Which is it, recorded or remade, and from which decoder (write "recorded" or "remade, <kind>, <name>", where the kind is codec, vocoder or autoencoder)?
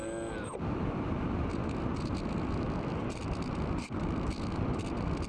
recorded